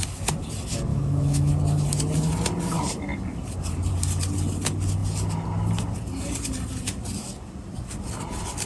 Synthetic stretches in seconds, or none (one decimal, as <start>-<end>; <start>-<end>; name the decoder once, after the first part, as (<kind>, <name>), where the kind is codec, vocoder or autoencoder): 0.9-1.5 (autoencoder, DAC-VAE)